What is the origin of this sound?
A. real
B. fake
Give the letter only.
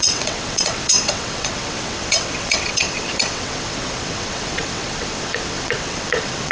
B